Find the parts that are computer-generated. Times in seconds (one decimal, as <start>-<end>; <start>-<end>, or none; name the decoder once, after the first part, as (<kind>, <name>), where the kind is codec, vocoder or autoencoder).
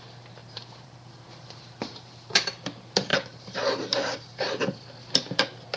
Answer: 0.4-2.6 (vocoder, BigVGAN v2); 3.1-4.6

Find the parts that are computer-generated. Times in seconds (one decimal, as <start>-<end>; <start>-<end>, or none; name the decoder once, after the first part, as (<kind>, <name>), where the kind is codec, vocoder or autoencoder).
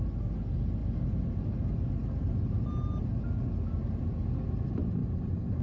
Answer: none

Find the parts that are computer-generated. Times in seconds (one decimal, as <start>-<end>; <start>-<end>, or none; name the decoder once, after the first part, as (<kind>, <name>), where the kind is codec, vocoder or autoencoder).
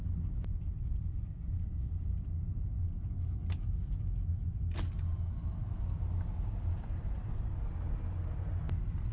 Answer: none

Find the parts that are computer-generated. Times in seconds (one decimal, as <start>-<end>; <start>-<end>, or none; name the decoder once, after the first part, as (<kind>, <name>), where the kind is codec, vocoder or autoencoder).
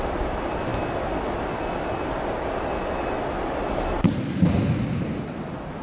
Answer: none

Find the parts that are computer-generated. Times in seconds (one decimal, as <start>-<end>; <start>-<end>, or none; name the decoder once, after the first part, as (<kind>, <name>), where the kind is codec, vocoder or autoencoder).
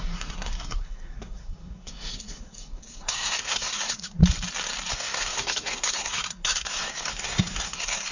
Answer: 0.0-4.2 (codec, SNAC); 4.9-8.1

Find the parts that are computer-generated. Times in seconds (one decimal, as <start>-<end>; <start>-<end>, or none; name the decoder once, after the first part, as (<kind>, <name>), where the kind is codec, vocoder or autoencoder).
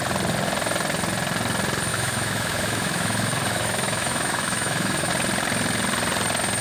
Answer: 1.9-5.1 (autoencoder, DAC-VAE)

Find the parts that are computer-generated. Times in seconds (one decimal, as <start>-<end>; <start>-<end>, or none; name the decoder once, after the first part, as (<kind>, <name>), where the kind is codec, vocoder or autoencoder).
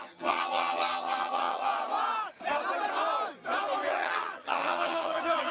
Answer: 0.0-1.7 (vocoder, HiFi-GAN); 3.9-5.5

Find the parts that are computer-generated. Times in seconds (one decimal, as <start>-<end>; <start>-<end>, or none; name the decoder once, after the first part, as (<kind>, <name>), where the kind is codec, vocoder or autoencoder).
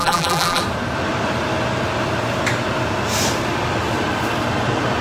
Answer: 0.0-0.6 (vocoder, BigVGAN v2)